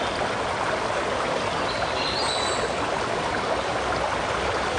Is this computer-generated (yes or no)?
no